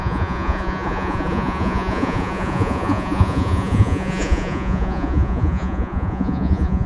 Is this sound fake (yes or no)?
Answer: yes